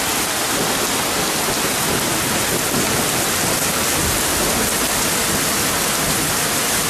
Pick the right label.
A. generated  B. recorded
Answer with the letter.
B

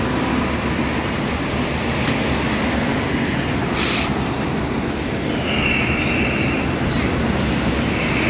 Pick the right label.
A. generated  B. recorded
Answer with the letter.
B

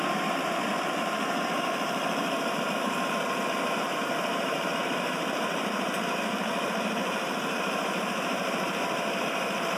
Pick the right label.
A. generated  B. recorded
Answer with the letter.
A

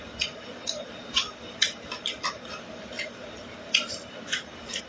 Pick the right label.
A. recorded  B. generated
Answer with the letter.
B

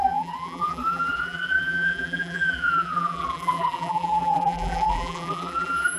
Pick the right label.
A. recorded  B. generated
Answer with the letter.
B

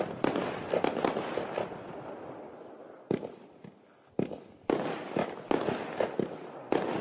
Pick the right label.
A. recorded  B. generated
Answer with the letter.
A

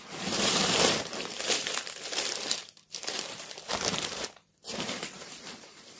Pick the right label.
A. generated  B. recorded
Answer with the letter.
A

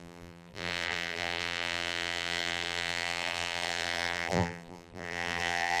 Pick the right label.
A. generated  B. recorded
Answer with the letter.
A